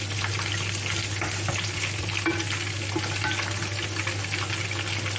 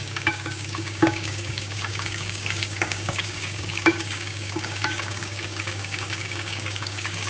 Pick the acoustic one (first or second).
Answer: first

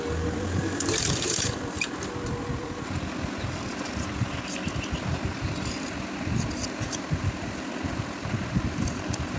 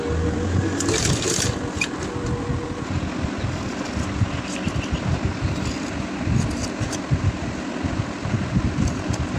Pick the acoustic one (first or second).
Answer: second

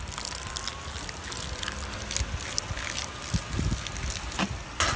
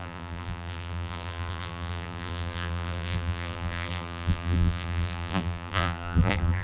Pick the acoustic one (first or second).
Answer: first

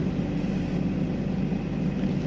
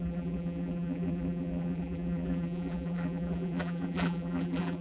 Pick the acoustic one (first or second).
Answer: first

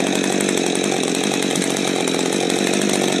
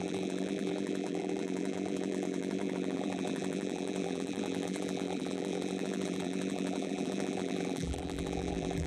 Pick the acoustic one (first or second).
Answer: first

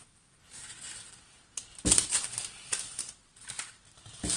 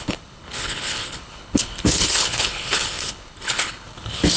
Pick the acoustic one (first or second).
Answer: first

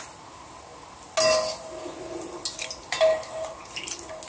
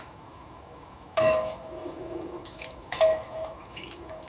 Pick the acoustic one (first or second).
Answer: first